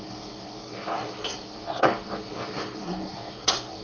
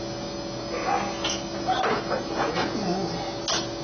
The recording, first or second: second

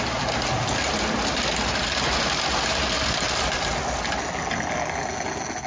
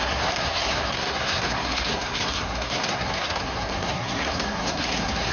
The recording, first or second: first